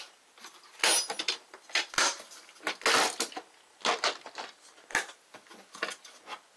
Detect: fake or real real